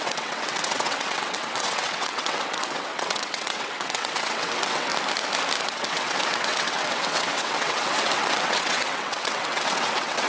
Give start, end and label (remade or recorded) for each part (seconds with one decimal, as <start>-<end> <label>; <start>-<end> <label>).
0.0-4.9 remade; 4.9-5.6 recorded; 5.6-10.3 remade